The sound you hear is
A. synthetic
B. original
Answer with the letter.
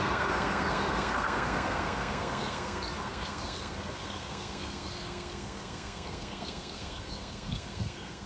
A